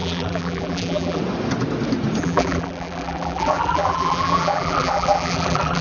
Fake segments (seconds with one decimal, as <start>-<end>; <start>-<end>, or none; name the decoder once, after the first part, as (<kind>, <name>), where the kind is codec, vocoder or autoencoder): 0.0-1.2 (vocoder, BigVGAN v2); 2.2-5.8

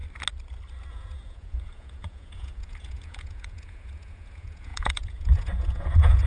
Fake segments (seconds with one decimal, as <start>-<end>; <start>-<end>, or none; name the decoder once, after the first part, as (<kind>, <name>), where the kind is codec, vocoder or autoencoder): 0.9-6.3 (vocoder, Vocos)

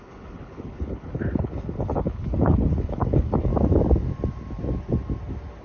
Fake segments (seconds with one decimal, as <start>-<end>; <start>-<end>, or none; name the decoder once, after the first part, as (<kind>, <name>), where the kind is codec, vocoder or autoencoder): 0.0-3.5 (codec, HILCodec)

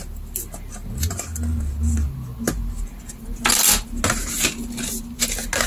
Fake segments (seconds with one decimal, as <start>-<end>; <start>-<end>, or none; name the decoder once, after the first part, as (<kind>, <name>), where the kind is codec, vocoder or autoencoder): none

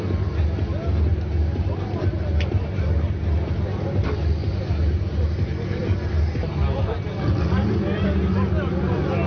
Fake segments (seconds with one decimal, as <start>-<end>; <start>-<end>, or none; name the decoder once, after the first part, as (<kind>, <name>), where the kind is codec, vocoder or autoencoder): none

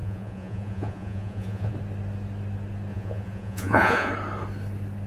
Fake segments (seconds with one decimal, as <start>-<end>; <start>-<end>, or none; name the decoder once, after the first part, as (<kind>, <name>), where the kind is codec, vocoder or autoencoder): 0.0-1.7 (vocoder, Vocos); 2.9-4.1